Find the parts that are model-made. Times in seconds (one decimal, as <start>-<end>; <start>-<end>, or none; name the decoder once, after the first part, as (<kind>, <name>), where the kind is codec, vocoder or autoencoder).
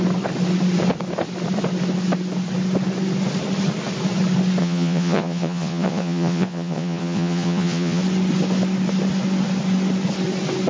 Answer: 4.6-8.0 (vocoder, Vocos)